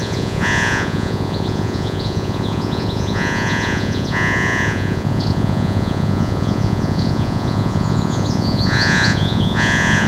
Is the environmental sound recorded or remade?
remade